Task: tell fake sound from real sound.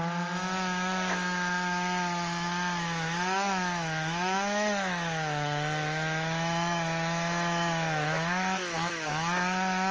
fake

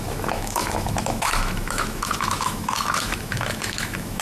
fake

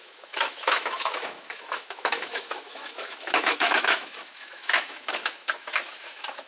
fake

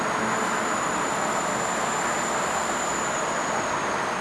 real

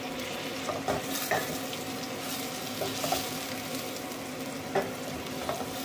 real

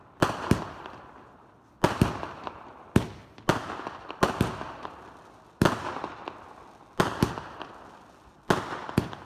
real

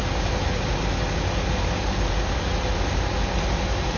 real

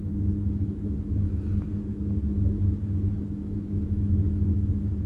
fake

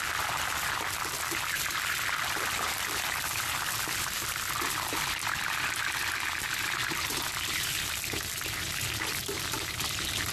real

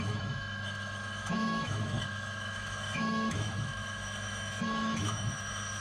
fake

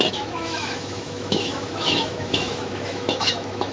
fake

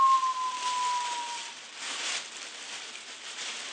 real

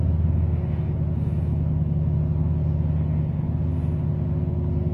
real